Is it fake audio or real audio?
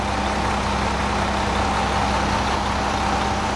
real